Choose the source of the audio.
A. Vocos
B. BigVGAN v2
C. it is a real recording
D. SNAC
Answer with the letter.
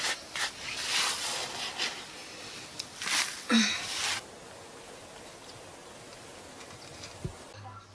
C